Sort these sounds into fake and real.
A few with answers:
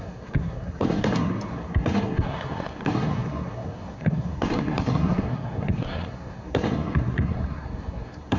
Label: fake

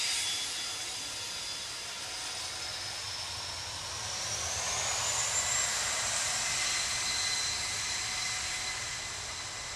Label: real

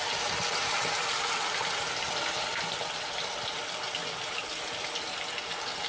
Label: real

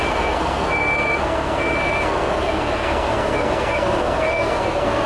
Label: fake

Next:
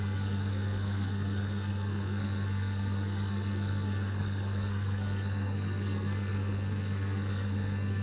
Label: fake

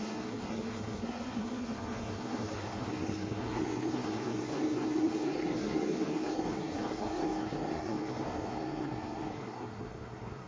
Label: fake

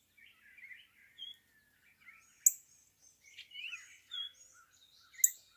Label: real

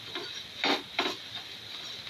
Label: real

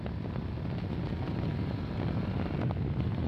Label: real